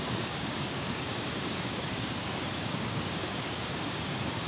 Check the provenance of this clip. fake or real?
fake